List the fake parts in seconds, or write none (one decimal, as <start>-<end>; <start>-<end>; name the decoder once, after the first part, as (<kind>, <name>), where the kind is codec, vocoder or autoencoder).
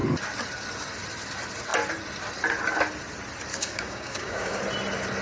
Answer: 3.5-4.6 (codec, DAC)